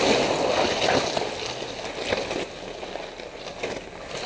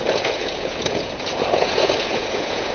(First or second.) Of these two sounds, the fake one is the second